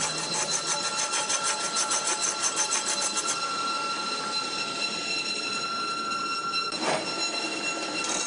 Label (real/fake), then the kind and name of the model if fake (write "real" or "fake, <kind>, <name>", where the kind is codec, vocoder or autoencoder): fake, vocoder, BigVGAN v2